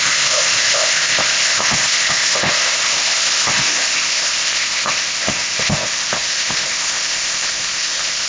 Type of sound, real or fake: fake